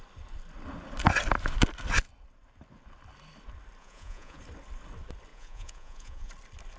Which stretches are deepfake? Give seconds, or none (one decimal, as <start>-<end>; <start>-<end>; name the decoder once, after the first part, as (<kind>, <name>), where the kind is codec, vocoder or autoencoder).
3.8-4.4 (vocoder, Vocos); 5.3-6.3